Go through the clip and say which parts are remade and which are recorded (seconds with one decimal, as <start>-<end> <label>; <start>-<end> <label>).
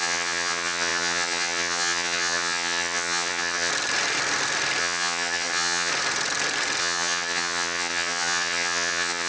0.0-3.7 remade; 3.7-4.8 recorded; 4.8-5.9 remade; 5.9-6.8 recorded; 6.8-9.3 remade